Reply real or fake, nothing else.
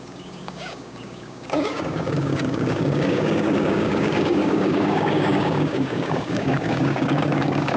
fake